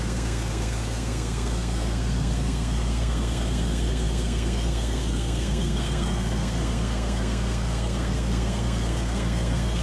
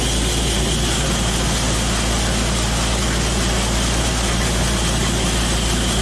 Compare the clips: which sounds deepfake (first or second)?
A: first